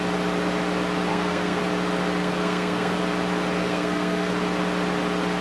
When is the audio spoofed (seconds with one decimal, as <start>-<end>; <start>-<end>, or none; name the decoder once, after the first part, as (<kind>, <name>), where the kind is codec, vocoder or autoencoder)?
1.1-1.6 (codec, SNAC); 2.2-3.0; 3.6-4.3